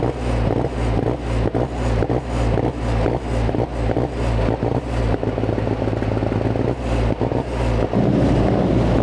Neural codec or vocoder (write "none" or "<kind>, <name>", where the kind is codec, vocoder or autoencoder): none